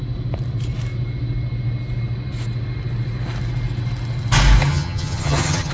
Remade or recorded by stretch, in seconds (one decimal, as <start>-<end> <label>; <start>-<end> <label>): 0.0-4.6 recorded; 4.6-5.7 remade

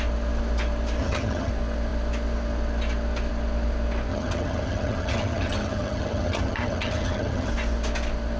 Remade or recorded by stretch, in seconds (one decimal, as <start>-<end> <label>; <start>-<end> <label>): 0.0-1.0 recorded; 1.0-1.5 remade; 1.5-4.1 recorded; 4.1-7.5 remade; 7.5-8.4 recorded

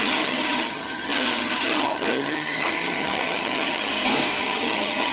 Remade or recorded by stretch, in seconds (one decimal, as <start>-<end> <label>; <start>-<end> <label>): 0.0-3.9 remade; 3.9-4.4 recorded; 4.4-5.1 remade

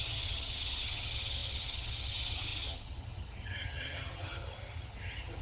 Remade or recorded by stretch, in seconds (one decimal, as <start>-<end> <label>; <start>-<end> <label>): 0.0-5.4 remade

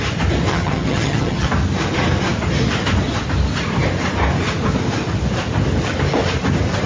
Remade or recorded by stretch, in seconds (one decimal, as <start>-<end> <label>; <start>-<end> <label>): 0.0-0.5 recorded; 0.5-1.5 remade; 1.5-6.9 recorded

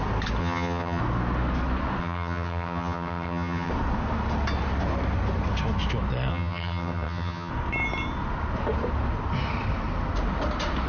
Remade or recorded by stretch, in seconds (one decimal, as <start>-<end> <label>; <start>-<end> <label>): 0.0-0.4 recorded; 0.4-1.0 remade; 1.0-2.0 recorded; 2.0-3.7 remade; 3.7-6.3 recorded; 6.3-7.5 remade; 7.5-10.9 recorded

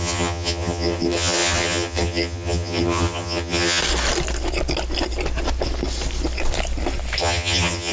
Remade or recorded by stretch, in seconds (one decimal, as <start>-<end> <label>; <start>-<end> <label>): 0.0-3.8 remade; 3.8-7.2 recorded; 7.2-7.9 remade